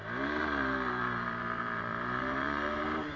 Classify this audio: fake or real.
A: fake